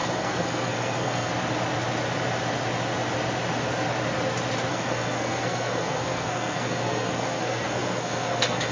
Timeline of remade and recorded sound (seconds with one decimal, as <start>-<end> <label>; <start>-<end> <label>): 0.0-1.3 remade; 1.3-4.7 recorded; 4.7-8.7 remade